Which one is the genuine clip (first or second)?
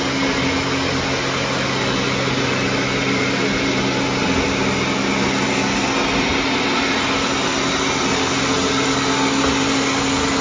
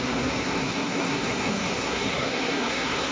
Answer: first